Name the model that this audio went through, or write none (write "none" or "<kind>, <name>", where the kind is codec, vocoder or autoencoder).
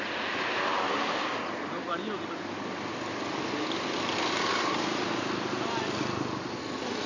none